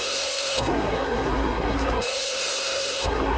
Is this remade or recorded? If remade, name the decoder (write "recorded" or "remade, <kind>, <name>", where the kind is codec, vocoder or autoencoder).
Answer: remade, codec, SNAC